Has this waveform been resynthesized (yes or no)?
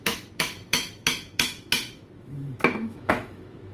yes